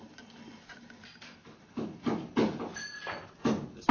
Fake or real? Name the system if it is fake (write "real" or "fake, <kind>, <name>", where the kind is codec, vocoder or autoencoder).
real